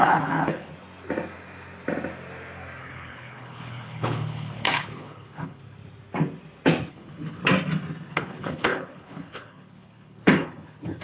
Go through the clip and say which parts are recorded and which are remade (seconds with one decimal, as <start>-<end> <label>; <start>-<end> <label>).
0.0-0.7 remade; 0.7-2.8 recorded; 2.8-5.6 remade; 5.6-6.9 recorded; 6.9-7.4 remade; 7.4-8.1 recorded; 8.1-11.0 remade